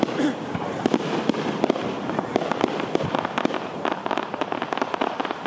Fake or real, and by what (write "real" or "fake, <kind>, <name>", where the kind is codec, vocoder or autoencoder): fake, vocoder, BigVGAN v2